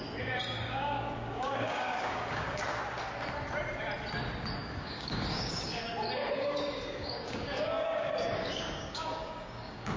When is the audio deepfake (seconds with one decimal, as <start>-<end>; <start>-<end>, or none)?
0.4-2.6; 4.6-5.8; 6.2-10.0

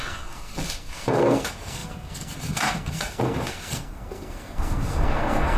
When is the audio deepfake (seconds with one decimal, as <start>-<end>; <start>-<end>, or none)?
0.0-5.6

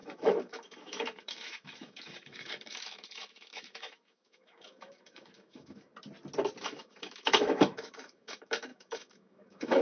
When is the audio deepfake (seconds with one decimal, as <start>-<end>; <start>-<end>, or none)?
0.0-5.9; 6.6-9.8

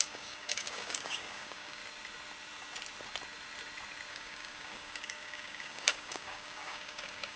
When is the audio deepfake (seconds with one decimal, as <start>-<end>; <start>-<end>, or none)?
0.0-1.8; 4.1-7.4

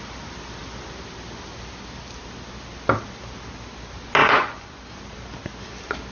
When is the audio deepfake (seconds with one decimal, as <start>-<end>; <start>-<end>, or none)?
4.2-4.9